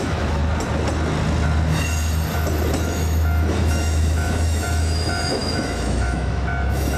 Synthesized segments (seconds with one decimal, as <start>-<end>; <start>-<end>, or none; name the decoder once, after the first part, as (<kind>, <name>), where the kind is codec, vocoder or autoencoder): 0.0-0.4 (autoencoder, DAC-VAE); 2.8-7.0